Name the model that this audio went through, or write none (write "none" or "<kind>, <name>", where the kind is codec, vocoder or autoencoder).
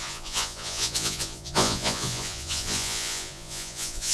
vocoder, Vocos